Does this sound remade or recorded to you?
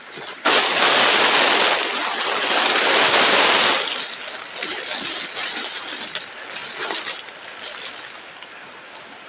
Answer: recorded